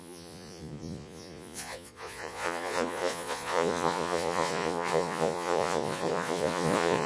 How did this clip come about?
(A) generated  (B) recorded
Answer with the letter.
A